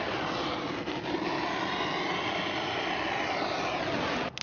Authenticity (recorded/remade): recorded